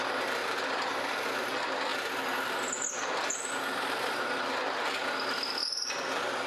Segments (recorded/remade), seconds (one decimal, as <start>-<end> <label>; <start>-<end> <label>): 0.0-6.5 recorded